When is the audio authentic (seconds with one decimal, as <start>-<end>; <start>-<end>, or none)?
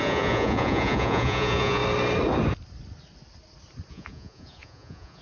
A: 1.8-3.9